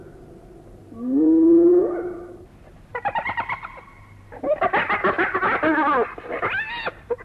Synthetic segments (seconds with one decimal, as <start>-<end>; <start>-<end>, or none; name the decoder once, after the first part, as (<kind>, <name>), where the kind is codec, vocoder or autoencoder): 0.8-1.7 (vocoder, BigVGAN v2); 2.9-3.5